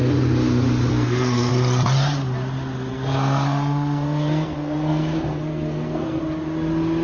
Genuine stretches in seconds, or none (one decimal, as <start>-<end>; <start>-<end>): 0.0-0.9; 1.5-2.9; 6.2-7.0